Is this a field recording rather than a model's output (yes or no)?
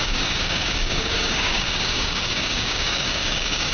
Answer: no